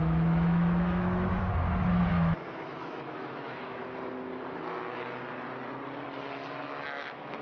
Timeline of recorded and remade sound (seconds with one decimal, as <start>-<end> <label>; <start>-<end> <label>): 0.0-1.5 remade; 1.5-2.1 recorded; 2.1-3.8 remade; 3.8-6.6 recorded; 6.6-7.4 remade